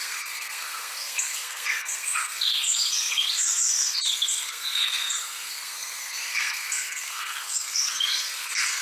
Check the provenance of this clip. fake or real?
fake